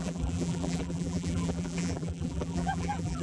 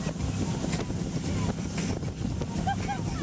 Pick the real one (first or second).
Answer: second